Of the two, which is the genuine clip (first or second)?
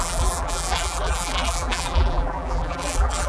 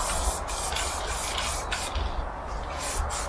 second